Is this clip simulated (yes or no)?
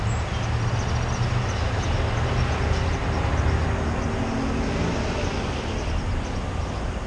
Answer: no